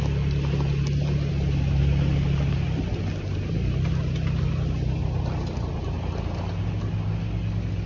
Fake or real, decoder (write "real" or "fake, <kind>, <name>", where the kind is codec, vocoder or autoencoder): real